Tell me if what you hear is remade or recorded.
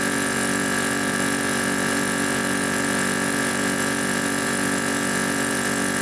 remade